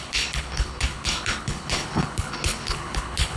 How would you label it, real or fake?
fake